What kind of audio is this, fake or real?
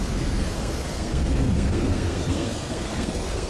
fake